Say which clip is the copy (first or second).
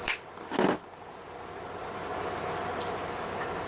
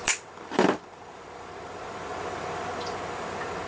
second